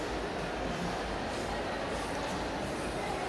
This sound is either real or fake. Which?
real